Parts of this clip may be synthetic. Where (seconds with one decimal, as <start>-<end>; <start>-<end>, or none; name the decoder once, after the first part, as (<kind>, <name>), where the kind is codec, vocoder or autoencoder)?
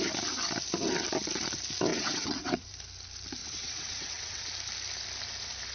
1.9-2.7 (vocoder, WaveNeXt); 3.4-4.4